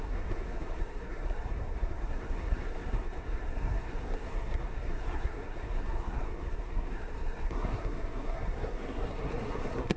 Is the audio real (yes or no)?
no